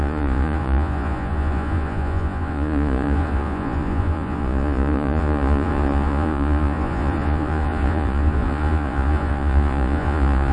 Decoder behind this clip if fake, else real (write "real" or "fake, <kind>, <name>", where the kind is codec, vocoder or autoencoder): fake, vocoder, Vocos